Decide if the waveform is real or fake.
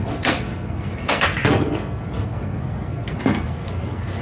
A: fake